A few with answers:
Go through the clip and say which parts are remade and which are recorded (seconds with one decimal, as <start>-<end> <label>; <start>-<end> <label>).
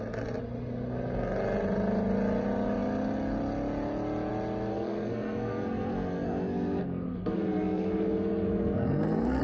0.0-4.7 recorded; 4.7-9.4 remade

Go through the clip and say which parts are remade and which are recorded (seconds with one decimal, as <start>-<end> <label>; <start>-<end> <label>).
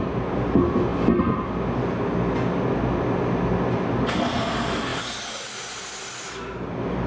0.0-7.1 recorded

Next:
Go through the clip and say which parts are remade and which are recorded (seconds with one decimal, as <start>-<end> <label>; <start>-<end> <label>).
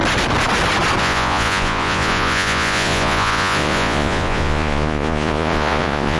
0.0-1.0 recorded; 1.0-6.2 remade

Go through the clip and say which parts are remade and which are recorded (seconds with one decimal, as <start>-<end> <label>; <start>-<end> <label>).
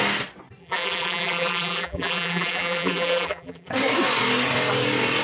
0.0-0.6 recorded; 0.6-3.7 remade; 3.7-5.2 recorded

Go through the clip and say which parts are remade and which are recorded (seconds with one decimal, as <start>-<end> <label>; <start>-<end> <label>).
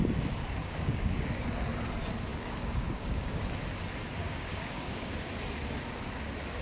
0.0-0.6 recorded; 0.6-1.3 remade; 1.3-2.3 recorded; 2.3-3.4 remade; 3.4-4.2 recorded; 4.2-5.1 remade; 5.1-6.6 recorded